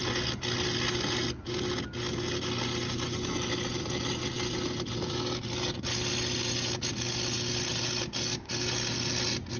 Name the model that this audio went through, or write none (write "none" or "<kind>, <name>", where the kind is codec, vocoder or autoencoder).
none